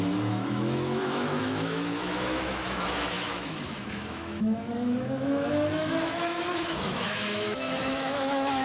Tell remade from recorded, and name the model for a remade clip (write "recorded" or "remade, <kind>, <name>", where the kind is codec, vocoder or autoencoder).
remade, autoencoder, DAC-VAE